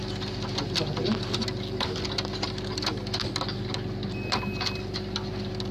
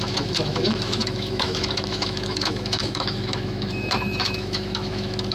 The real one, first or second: first